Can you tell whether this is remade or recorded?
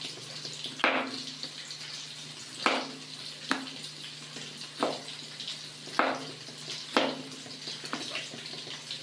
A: recorded